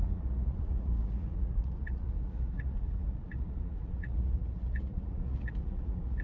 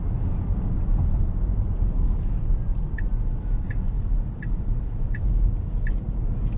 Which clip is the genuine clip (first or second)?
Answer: second